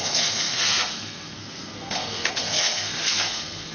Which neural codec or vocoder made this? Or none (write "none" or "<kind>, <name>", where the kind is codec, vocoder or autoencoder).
codec, SNAC